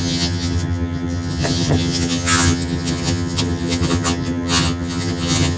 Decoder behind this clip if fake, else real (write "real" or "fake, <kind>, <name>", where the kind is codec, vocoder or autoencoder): fake, vocoder, HiFi-GAN